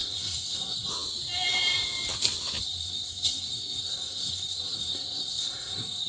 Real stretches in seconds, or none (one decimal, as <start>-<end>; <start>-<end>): 0.9-2.6